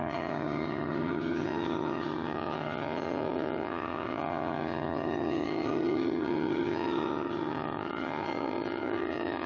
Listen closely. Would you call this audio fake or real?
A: fake